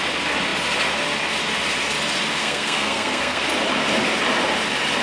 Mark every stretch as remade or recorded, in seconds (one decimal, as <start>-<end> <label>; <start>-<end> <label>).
0.0-2.4 recorded; 2.4-3.4 remade; 3.4-5.0 recorded